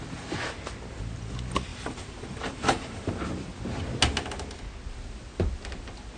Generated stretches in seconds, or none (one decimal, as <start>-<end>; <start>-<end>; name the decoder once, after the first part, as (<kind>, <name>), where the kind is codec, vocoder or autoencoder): 1.7-3.1 (vocoder, BigVGAN v2)